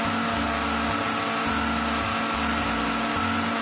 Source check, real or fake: real